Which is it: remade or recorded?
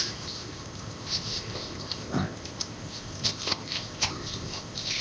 remade